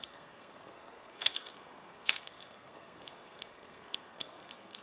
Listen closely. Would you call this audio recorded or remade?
remade